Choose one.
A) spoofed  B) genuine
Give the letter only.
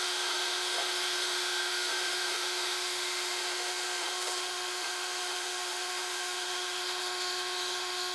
A